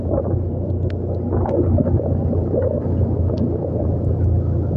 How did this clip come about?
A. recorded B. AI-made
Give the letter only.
A